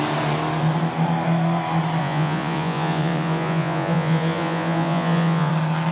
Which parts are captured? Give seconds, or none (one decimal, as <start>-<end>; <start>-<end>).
0.0-2.0; 5.5-5.9